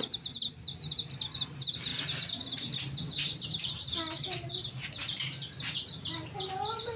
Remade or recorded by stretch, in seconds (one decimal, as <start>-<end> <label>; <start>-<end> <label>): 0.0-7.0 recorded